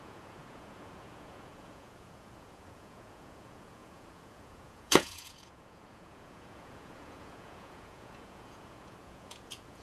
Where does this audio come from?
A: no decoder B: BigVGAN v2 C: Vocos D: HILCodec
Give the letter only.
C